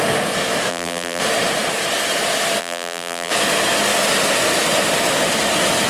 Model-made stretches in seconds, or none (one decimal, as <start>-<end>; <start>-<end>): 0.7-1.2; 2.6-3.3